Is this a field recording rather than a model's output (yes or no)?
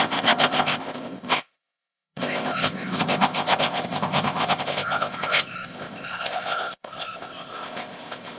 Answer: no